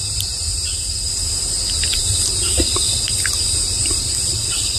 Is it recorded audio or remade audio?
recorded